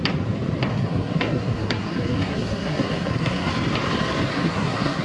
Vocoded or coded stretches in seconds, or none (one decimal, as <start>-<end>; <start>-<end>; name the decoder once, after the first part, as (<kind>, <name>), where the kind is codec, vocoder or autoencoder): 0.7-3.5 (codec, SNAC); 4.3-5.0